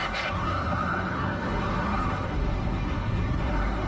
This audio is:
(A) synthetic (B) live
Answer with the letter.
A